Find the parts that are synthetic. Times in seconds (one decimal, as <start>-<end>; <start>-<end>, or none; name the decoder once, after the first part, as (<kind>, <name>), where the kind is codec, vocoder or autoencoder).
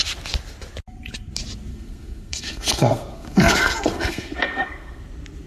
1.7-5.0 (codec, SNAC)